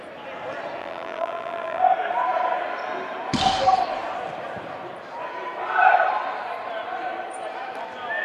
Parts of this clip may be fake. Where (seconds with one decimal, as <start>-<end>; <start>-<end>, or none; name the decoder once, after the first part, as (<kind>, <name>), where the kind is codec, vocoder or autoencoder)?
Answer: 0.8-1.8 (vocoder, BigVGAN v2)